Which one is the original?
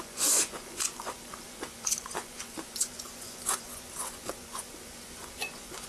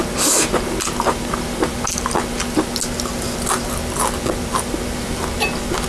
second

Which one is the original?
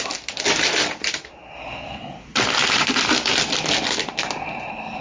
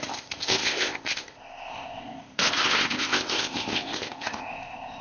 first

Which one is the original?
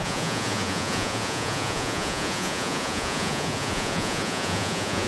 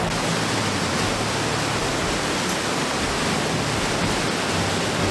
second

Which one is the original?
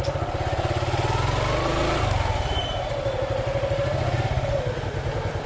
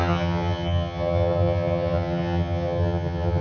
first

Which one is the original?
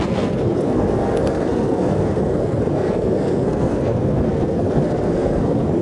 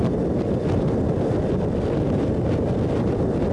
second